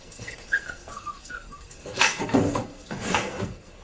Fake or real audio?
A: fake